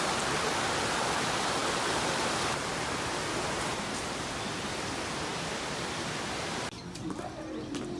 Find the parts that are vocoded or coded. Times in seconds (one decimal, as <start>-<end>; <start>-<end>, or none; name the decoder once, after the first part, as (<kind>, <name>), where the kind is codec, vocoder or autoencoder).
none